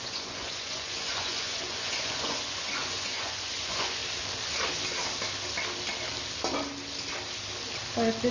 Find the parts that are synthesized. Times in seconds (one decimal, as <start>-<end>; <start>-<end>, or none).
0.0-4.0